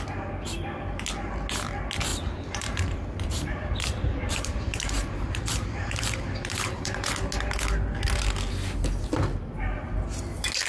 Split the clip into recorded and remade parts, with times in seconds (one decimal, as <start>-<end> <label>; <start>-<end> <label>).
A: 0.0-2.1 recorded; 2.1-7.1 remade; 7.1-10.7 recorded